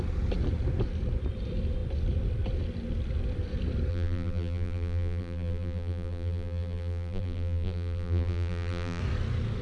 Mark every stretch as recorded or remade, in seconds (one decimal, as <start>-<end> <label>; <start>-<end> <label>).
0.0-3.9 recorded; 3.9-9.0 remade; 9.0-9.6 recorded